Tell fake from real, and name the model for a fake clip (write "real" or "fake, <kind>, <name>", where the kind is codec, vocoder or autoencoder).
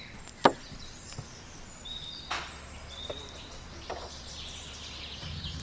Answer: real